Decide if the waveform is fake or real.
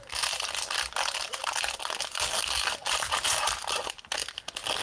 real